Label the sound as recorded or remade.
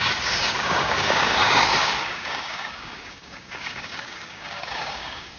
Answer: remade